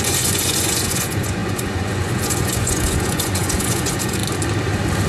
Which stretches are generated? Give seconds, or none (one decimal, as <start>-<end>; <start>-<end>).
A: 0.0-4.2

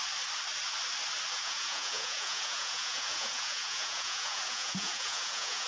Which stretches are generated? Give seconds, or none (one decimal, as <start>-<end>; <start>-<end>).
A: 1.3-5.7

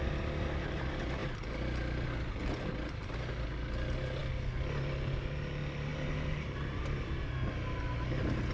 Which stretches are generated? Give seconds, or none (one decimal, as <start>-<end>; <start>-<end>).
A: 5.9-7.3

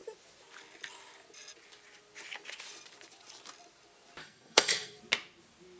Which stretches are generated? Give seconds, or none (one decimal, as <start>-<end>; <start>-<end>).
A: 4.2-5.0